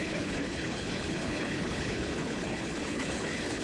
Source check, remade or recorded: remade